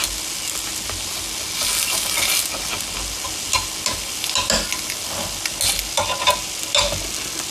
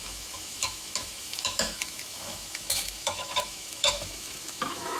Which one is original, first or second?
first